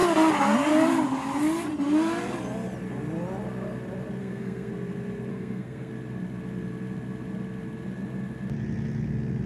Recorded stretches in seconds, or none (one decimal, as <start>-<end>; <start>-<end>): 0.0-4.2; 4.7-5.3; 5.9-9.5

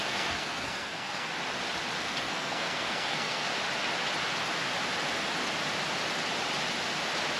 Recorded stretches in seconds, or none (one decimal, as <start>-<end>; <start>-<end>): 1.3-2.0; 3.5-7.4